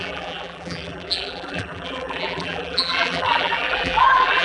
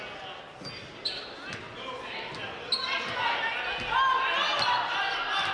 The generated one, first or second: first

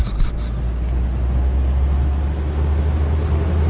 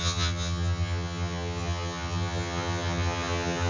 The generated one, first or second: second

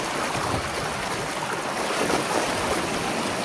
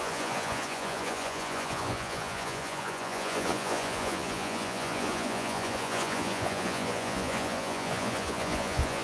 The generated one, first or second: second